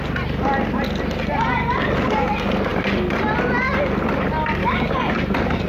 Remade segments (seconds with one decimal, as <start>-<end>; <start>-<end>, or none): 4.6-5.1